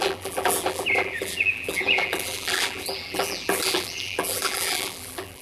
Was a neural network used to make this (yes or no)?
yes